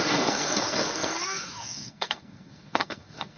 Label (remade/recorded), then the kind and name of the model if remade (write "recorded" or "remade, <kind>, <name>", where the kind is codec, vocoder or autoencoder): remade, codec, SNAC